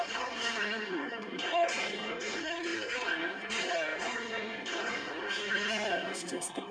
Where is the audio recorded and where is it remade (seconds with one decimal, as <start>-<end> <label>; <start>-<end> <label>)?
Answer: 0.0-6.7 remade